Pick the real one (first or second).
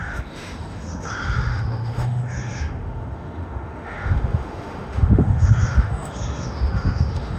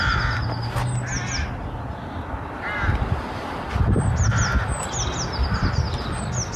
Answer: second